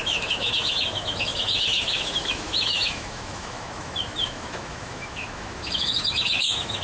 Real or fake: fake